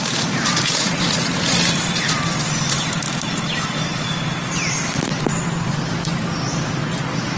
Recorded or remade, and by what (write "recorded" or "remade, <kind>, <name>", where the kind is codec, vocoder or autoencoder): recorded